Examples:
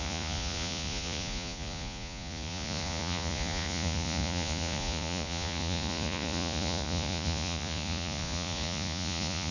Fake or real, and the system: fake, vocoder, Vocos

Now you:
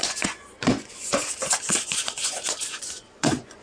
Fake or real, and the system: fake, vocoder, Vocos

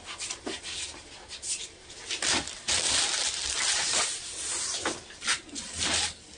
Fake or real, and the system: real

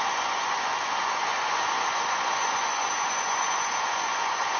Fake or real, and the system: fake, vocoder, Vocos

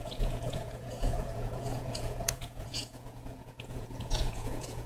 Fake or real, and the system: fake, vocoder, Vocos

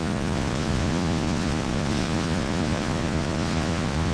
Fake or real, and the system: fake, vocoder, Vocos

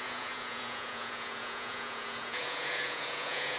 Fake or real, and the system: fake, vocoder, Vocos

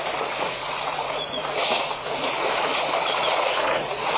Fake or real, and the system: fake, vocoder, Vocos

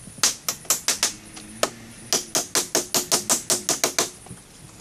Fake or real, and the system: real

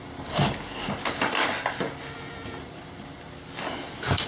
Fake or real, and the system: real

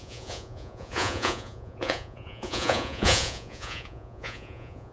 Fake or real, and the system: fake, vocoder, Vocos